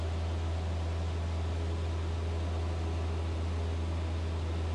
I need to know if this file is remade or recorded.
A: recorded